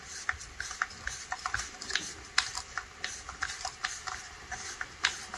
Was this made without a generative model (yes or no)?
yes